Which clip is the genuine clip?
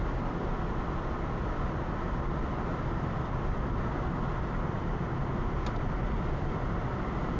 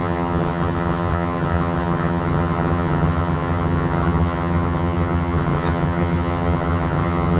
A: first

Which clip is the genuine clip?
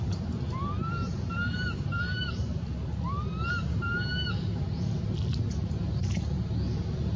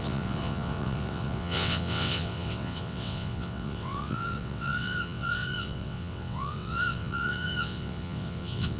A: first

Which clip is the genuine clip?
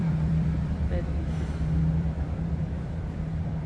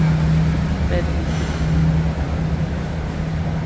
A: second